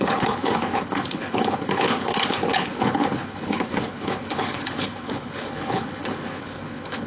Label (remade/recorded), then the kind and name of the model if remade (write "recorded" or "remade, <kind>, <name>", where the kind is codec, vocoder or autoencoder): remade, codec, HILCodec